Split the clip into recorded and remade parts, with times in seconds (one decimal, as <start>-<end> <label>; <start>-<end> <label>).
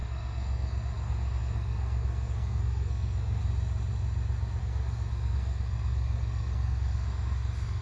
0.0-3.4 remade; 3.4-4.6 recorded; 4.6-7.8 remade